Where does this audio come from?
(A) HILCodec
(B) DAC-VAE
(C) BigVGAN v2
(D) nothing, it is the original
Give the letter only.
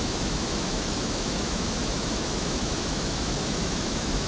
B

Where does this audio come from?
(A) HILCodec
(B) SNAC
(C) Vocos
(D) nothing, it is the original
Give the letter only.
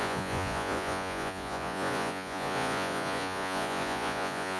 C